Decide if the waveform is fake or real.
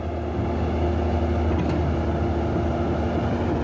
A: real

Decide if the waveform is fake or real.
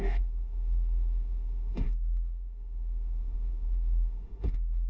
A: fake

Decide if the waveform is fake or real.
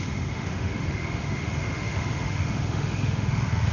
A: fake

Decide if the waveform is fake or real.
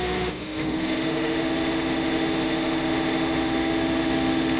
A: fake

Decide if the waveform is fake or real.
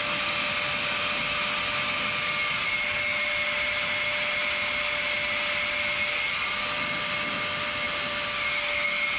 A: real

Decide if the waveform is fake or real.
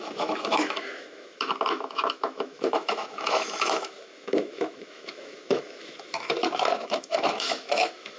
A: fake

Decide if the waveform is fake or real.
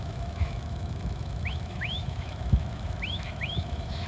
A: fake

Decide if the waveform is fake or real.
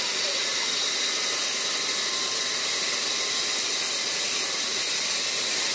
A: real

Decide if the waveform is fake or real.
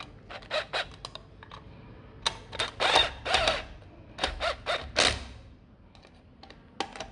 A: real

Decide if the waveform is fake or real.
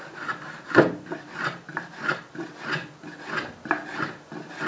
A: real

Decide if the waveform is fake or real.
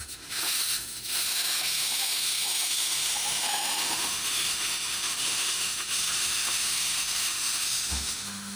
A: fake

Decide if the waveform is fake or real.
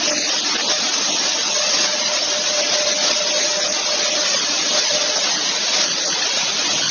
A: real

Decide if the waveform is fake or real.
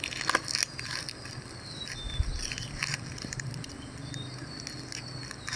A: real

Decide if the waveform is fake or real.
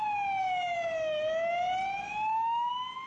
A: real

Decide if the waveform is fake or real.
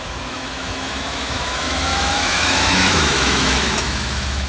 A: fake